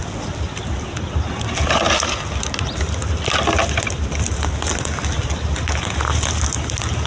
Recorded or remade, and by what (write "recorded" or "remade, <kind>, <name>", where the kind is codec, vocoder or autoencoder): recorded